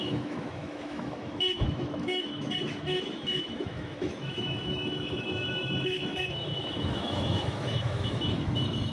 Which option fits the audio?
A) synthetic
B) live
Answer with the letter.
A